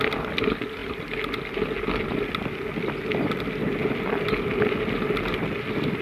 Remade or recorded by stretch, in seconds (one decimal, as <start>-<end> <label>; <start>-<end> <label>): 0.0-6.0 recorded